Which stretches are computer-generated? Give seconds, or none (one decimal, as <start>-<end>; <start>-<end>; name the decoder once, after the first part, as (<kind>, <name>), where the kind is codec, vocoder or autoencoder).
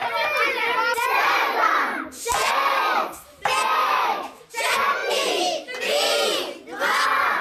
3.8-4.5 (autoencoder, DAC-VAE)